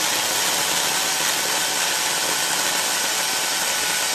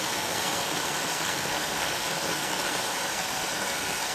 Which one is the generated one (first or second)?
second